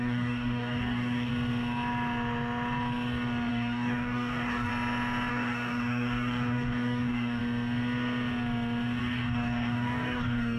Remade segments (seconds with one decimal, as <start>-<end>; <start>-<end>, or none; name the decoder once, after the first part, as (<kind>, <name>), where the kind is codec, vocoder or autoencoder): 0.0-1.3 (codec, DAC); 3.5-4.7; 5.3-7.4; 9.0-10.6